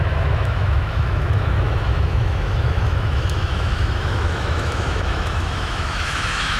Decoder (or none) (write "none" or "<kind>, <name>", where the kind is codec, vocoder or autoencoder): autoencoder, DAC-VAE